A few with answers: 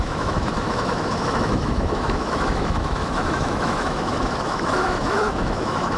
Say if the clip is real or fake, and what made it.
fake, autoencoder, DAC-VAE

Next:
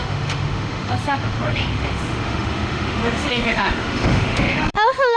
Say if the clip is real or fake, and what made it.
fake, autoencoder, DAC-VAE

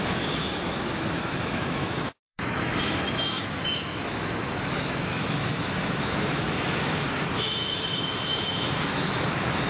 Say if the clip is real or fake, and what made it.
fake, autoencoder, DAC-VAE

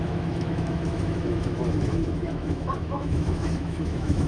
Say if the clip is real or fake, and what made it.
fake, autoencoder, DAC-VAE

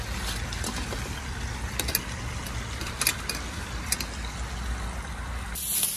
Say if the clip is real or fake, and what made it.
real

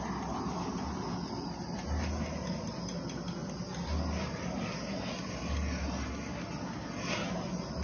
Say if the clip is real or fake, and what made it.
real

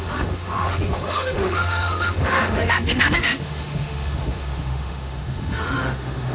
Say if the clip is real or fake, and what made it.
fake, autoencoder, DAC-VAE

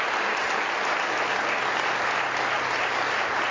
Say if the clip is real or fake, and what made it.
real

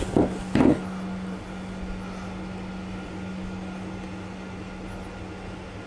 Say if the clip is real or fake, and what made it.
real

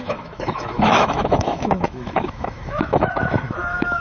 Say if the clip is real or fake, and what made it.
fake, autoencoder, DAC-VAE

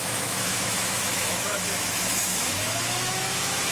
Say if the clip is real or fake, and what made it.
fake, autoencoder, DAC-VAE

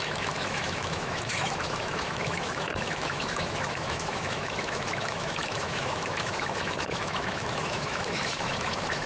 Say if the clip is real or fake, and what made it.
fake, autoencoder, DAC-VAE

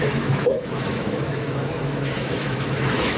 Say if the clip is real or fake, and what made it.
fake, autoencoder, DAC-VAE